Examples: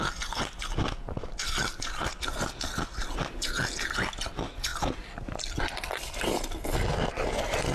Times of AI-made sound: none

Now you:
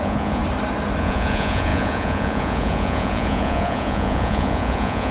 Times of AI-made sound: 0.0-0.4 (vocoder, Vocos); 1.0-5.1

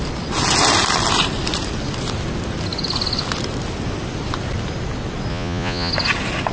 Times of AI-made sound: 5.3-5.9 (vocoder, Vocos)

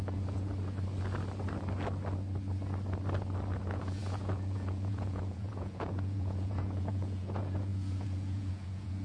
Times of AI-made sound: 0.0-0.5 (vocoder, Vocos); 3.6-9.0

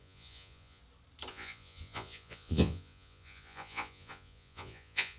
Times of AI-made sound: 0.0-0.8 (vocoder, Vocos); 1.3-5.2

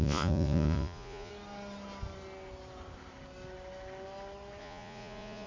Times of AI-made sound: 0.0-1.3 (vocoder, Vocos); 4.6-5.5

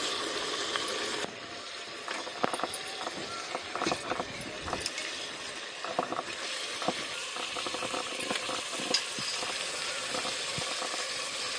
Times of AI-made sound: none

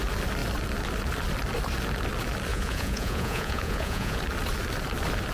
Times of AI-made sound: 2.5-4.2 (vocoder, Vocos)